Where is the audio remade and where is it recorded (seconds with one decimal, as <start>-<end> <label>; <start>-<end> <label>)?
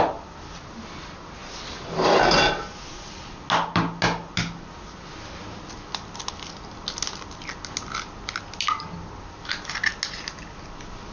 0.0-11.1 recorded